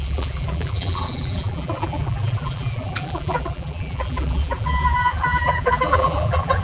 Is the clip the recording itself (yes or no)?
no